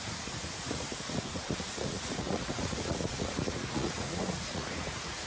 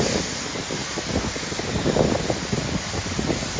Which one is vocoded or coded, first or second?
first